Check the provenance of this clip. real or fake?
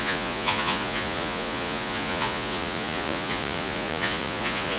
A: fake